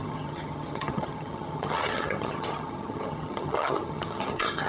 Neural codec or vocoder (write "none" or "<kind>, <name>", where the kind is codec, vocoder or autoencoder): vocoder, HiFi-GAN